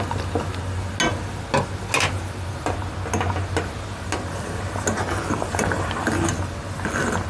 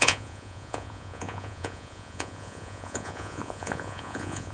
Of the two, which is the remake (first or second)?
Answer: second